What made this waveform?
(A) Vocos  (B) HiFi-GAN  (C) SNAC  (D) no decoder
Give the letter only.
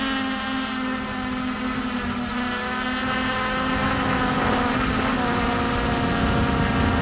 D